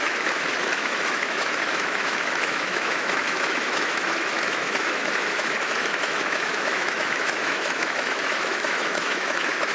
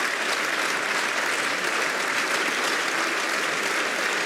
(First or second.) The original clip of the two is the second